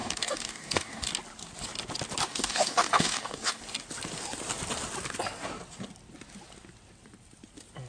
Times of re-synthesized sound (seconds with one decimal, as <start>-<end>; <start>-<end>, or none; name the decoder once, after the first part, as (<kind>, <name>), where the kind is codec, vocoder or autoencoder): 0.0-1.1 (codec, DAC); 2.3-3.6

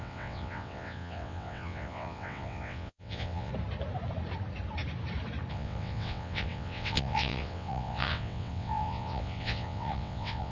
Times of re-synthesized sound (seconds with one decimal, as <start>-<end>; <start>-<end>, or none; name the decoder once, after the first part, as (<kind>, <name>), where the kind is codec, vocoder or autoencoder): 0.0-3.5 (vocoder, WaveNeXt); 5.5-10.5

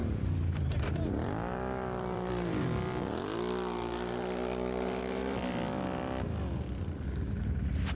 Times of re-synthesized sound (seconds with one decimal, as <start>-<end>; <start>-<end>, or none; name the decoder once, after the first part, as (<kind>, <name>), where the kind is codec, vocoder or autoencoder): 0.0-2.3 (vocoder, BigVGAN v2)

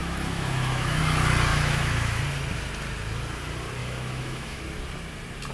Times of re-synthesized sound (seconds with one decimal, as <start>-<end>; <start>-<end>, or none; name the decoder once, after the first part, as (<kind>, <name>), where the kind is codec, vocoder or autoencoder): 0.0-1.0 (autoencoder, DAC-VAE); 1.5-2.2; 3.8-4.6

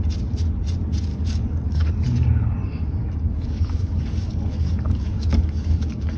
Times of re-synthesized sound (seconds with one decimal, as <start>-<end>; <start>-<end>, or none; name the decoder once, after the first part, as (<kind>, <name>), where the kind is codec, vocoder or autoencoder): 1.1-1.9 (codec, DAC); 3.0-6.2